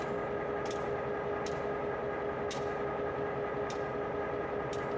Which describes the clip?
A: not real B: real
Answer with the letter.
B